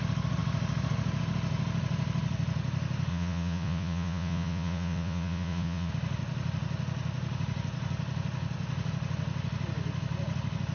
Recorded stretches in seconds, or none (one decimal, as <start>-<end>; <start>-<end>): 0.0-3.1; 5.9-10.7